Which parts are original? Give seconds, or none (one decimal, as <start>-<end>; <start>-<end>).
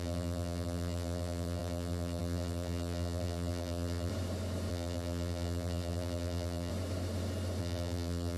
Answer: 4.1-4.7; 6.7-7.6